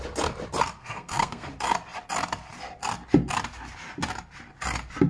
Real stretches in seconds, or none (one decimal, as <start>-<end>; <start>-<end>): 0.0-0.8; 1.5-5.1